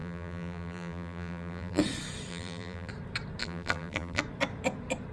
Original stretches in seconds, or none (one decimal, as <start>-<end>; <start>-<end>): 1.8-2.3; 2.9-3.4; 4.2-5.1